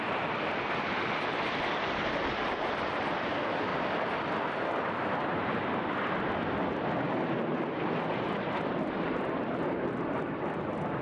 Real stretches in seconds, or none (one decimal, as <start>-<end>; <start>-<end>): 3.7-8.4